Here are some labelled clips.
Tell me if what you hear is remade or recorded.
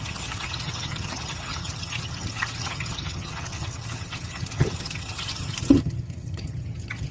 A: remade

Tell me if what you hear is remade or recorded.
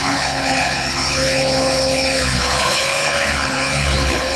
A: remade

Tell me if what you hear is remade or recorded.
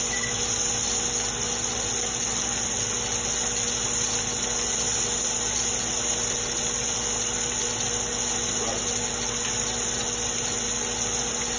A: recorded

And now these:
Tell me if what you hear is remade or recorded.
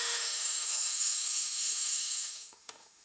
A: remade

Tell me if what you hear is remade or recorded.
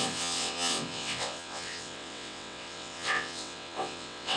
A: remade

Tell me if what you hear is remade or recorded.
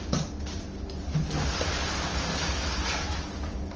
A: recorded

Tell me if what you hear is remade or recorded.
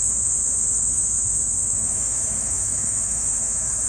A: remade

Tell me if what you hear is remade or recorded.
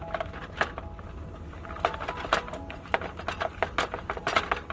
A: recorded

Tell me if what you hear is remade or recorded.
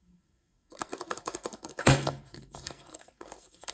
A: remade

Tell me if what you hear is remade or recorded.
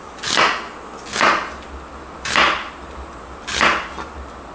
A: recorded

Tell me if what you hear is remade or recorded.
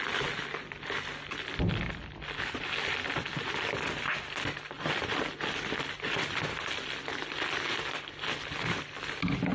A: recorded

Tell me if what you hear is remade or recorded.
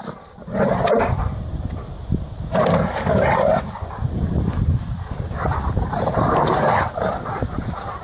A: remade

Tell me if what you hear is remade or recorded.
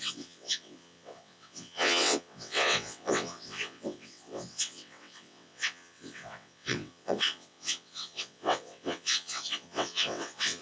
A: remade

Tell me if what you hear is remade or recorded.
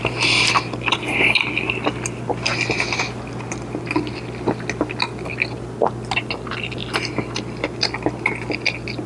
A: recorded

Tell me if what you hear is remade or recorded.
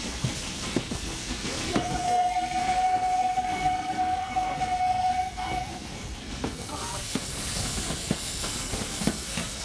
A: remade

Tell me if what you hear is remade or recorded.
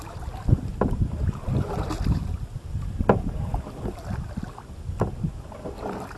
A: recorded